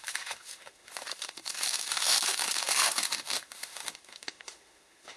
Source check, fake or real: fake